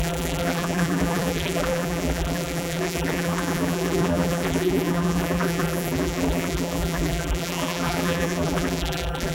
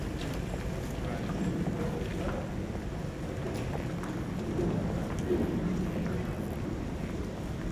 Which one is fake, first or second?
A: first